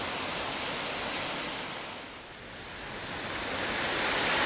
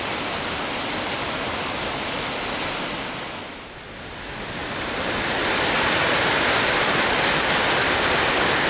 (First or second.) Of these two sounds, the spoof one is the second